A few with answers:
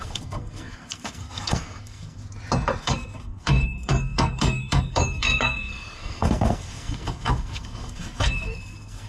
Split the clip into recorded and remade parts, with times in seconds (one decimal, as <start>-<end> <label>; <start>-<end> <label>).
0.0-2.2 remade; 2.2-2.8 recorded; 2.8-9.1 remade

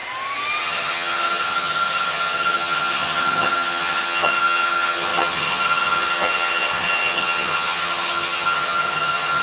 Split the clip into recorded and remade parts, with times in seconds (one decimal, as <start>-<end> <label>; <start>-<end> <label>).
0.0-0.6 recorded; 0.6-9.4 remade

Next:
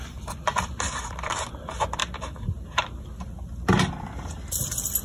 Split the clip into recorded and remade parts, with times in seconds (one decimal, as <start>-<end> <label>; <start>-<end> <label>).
0.0-2.0 remade; 2.0-5.0 recorded

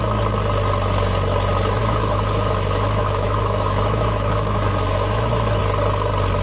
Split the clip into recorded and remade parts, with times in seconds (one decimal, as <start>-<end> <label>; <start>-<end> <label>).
0.0-1.8 recorded; 1.8-5.6 remade; 5.6-6.4 recorded